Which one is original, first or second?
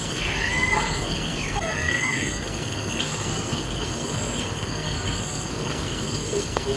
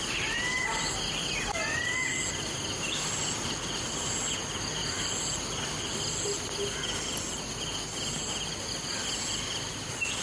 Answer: second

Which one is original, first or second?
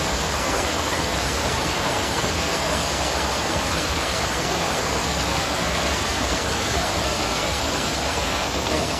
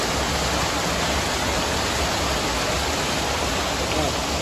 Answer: second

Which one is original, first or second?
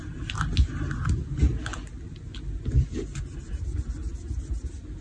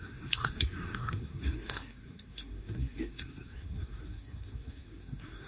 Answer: first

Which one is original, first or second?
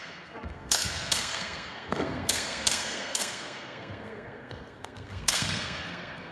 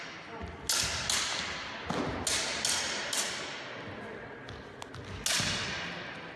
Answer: second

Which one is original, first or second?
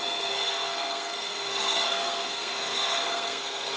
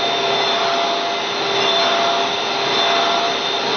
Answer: second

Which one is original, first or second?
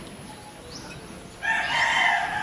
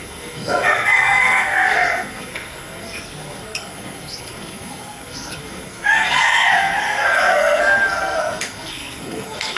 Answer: first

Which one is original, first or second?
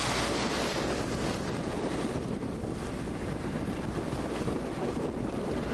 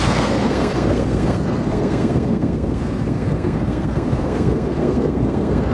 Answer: first